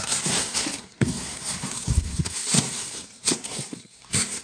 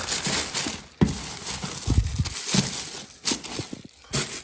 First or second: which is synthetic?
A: first